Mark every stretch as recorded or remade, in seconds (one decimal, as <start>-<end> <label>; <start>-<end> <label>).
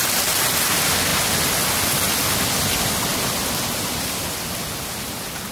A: 0.0-5.5 recorded